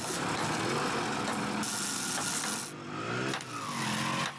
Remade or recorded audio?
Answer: recorded